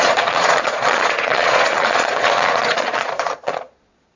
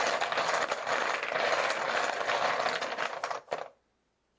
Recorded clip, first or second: second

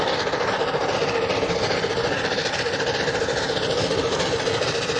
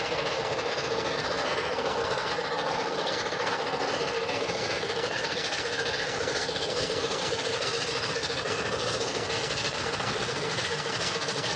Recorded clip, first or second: first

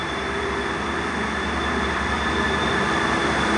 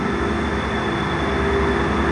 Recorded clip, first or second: second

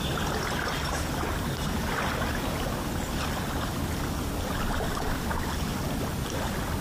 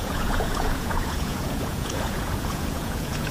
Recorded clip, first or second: first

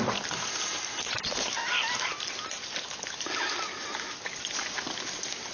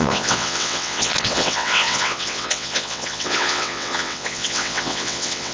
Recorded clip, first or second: first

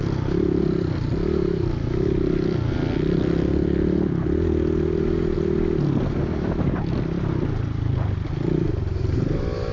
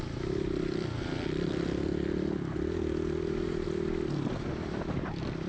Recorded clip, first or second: first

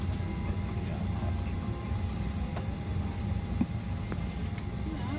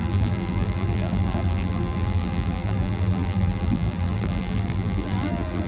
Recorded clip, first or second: first